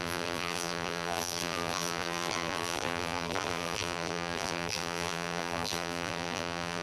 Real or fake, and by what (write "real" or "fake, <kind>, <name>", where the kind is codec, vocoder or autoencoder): fake, vocoder, BigVGAN v2